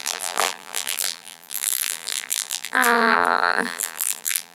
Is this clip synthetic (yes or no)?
yes